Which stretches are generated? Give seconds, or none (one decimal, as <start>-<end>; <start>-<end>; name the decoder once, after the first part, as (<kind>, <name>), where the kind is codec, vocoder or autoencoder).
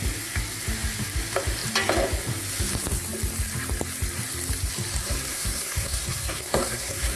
5.3-7.2 (codec, SNAC)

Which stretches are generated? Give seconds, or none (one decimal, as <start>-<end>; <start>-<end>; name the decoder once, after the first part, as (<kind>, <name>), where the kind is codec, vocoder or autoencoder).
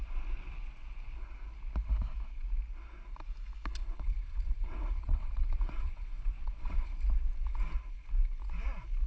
3.8-6.9 (vocoder, WaveNeXt)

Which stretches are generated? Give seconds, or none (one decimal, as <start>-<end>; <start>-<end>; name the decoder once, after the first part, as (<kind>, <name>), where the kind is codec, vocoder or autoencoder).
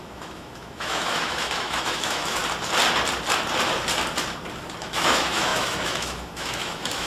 0.0-2.4 (autoencoder, DAC-VAE); 4.8-7.1